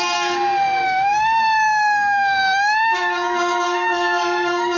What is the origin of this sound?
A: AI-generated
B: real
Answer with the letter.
A